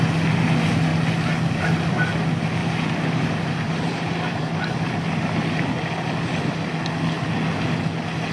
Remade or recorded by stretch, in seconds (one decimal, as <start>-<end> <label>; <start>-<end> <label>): 0.0-2.6 recorded; 2.6-4.9 remade; 4.9-8.3 recorded